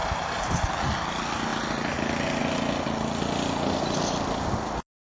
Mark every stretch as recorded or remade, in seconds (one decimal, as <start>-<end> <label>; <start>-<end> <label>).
0.0-0.7 remade; 0.7-5.1 recorded